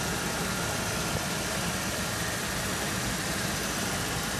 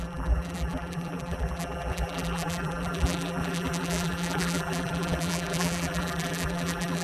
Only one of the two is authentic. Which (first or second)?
first